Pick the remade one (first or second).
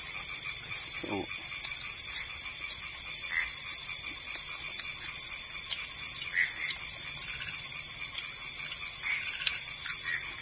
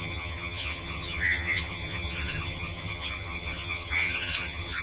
second